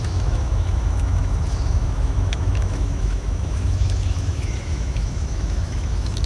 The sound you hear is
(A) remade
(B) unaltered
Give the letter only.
A